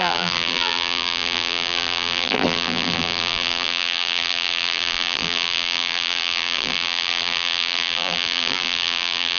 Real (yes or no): no